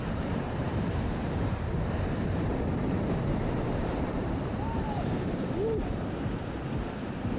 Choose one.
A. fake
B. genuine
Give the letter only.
A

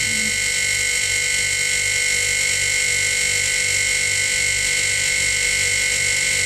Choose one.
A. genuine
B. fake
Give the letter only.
A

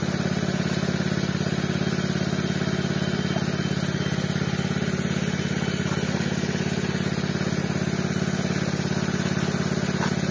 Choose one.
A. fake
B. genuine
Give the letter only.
B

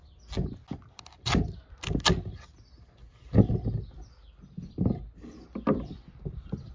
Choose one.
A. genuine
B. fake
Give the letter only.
A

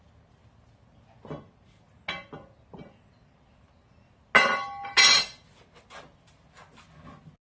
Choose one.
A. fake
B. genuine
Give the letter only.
B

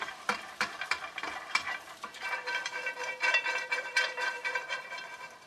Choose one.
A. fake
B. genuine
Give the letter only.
A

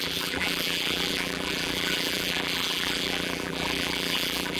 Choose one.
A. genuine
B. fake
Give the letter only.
B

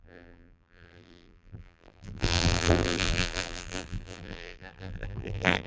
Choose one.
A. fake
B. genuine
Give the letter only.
A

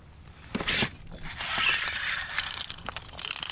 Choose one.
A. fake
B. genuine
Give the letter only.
B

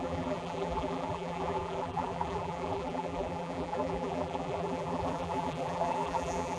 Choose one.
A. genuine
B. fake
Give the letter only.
B